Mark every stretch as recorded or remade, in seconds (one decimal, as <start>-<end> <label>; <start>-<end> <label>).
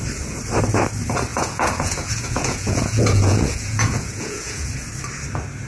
0.0-1.3 recorded; 1.3-4.7 remade; 4.7-5.7 recorded